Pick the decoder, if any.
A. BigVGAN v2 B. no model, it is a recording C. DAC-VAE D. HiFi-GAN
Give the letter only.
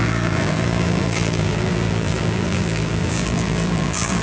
A